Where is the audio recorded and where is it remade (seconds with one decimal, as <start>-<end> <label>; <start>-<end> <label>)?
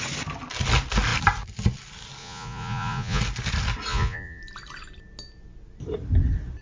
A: 0.0-2.2 recorded; 2.2-3.2 remade; 3.2-3.9 recorded; 3.9-4.4 remade; 4.4-6.6 recorded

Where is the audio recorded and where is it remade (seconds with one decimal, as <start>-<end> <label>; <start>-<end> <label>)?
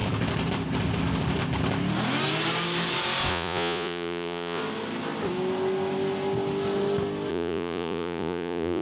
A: 0.0-3.3 recorded; 3.3-4.6 remade; 4.6-7.3 recorded; 7.3-8.8 remade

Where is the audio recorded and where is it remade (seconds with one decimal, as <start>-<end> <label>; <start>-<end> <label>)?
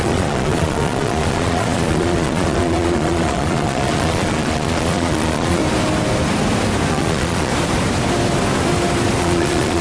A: 0.0-5.6 remade; 5.6-6.9 recorded; 6.9-7.5 remade; 7.5-9.2 recorded; 9.2-9.8 remade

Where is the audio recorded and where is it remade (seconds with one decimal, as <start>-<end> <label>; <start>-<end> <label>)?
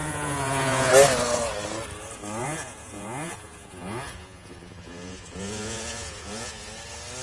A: 0.0-0.9 remade; 0.9-2.4 recorded; 2.4-6.7 remade; 6.7-7.2 recorded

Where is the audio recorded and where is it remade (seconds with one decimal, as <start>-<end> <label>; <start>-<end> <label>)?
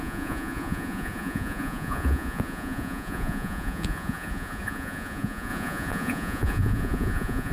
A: 0.0-7.5 remade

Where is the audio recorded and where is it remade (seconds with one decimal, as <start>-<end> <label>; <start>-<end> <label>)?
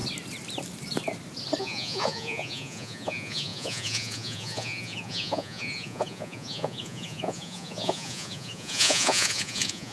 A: 0.0-1.6 recorded; 1.6-9.9 remade